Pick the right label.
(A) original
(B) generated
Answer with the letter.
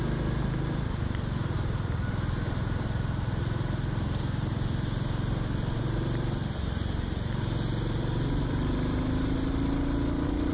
A